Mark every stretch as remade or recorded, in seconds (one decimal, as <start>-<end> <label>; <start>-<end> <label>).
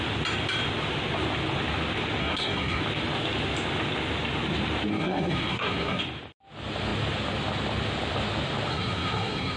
0.0-2.2 recorded; 2.2-2.8 remade; 2.8-4.9 recorded; 4.9-6.0 remade; 6.0-8.7 recorded; 8.7-9.6 remade